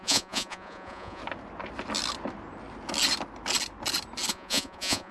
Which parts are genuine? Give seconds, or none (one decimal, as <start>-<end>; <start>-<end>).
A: 1.2-4.3